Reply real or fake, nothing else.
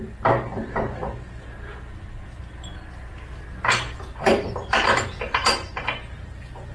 real